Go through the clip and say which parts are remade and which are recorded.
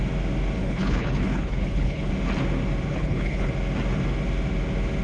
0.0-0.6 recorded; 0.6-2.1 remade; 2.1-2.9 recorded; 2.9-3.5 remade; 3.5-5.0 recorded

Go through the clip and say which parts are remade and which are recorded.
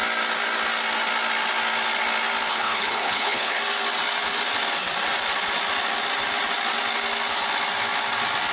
0.0-2.5 recorded; 2.5-3.6 remade; 3.6-8.5 recorded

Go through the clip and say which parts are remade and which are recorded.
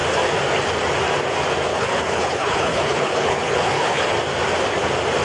0.0-1.7 recorded; 1.7-4.0 remade; 4.0-5.2 recorded